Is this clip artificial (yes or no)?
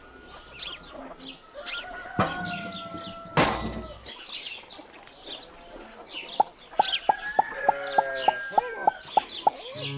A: no